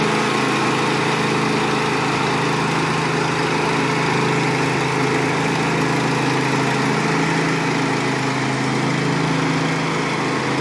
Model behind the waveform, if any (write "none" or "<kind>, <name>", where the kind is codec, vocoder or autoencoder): none